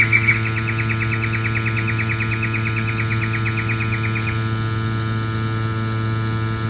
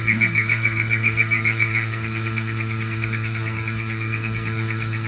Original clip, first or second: first